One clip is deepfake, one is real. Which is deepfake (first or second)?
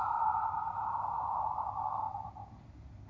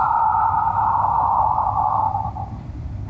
second